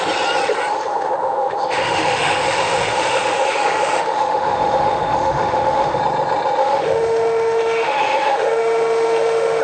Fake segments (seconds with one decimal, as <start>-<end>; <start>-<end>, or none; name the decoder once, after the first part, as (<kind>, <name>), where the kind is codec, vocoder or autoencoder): 0.7-6.0 (autoencoder, DAC-VAE); 6.6-9.6